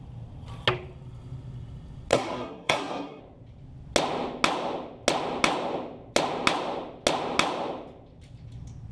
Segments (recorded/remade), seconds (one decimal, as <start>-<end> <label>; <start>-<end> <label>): 0.0-2.1 recorded; 2.1-3.2 remade; 3.2-8.9 recorded